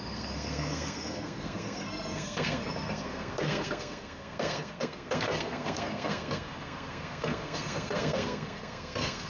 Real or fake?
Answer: fake